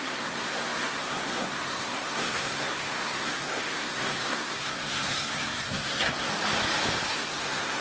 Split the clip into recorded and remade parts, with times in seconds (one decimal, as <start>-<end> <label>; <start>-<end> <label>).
0.0-6.3 remade; 6.3-7.1 recorded; 7.1-7.8 remade